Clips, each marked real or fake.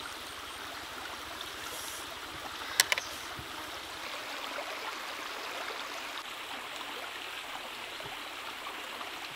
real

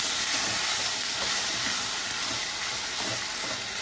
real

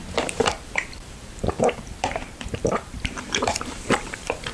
fake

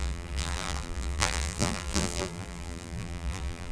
fake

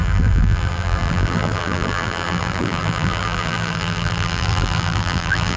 fake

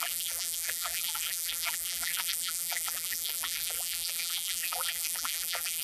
fake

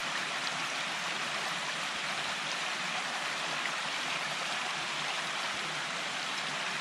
fake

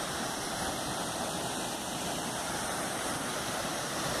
fake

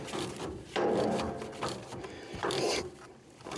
fake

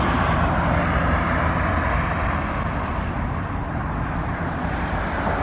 fake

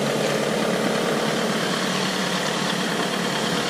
real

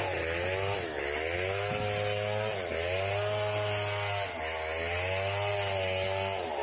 real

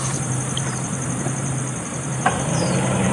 fake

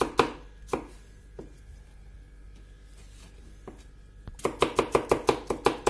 real